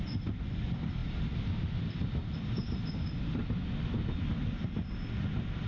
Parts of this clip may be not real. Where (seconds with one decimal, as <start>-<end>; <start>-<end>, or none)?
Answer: none